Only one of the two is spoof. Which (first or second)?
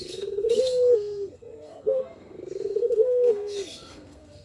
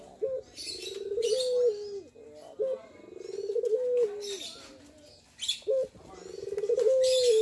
first